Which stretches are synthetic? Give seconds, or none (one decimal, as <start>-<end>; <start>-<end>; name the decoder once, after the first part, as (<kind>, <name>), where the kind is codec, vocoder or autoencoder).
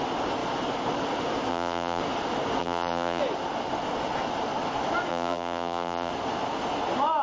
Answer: 1.5-2.0 (vocoder, BigVGAN v2); 2.6-3.2; 5.1-6.1